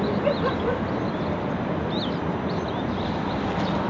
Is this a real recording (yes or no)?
yes